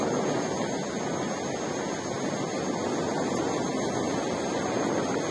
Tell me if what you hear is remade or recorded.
recorded